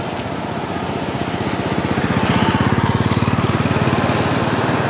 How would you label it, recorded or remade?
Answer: recorded